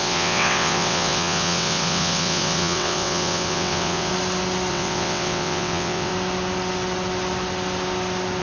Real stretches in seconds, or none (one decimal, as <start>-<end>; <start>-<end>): 4.1-4.7; 6.1-8.4